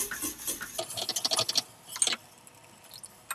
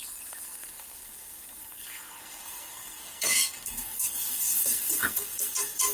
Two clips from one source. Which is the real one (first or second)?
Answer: first